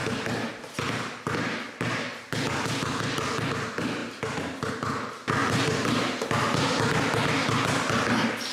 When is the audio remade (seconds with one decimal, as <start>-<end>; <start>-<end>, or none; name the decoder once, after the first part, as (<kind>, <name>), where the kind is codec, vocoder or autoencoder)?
5.4-6.1 (vocoder, BigVGAN v2)